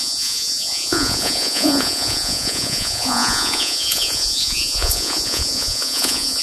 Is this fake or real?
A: fake